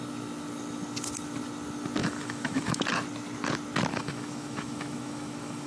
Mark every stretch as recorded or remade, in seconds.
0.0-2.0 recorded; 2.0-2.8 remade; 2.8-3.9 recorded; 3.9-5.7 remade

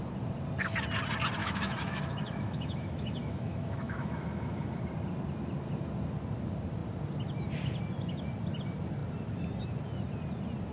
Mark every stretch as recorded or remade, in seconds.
0.0-1.4 recorded; 1.4-4.8 remade; 4.8-10.7 recorded

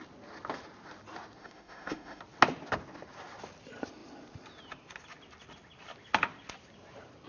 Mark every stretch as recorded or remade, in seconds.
0.0-1.4 recorded; 1.4-2.2 remade; 2.2-7.3 recorded

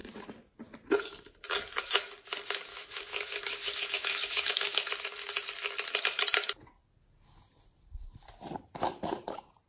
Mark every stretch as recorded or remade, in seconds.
0.0-2.7 recorded; 2.7-4.9 remade; 4.9-9.7 recorded

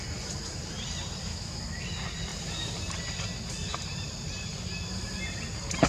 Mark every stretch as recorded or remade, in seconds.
0.0-1.3 recorded; 1.3-1.8 remade; 1.8-5.9 recorded

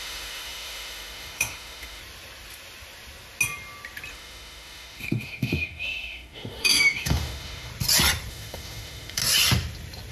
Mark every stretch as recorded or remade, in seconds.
0.0-2.0 remade; 2.0-4.1 recorded; 4.1-7.7 remade; 7.7-8.3 recorded; 8.3-9.2 remade; 9.2-10.1 recorded

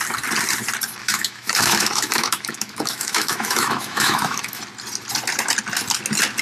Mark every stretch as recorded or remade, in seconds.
0.0-1.0 recorded; 1.0-4.6 remade; 4.6-6.4 recorded